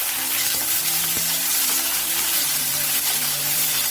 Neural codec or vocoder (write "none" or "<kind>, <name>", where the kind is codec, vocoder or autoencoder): vocoder, BigVGAN v2